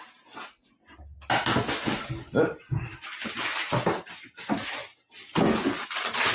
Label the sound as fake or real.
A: real